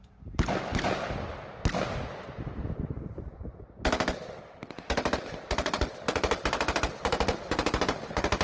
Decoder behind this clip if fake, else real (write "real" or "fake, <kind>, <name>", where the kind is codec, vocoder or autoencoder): real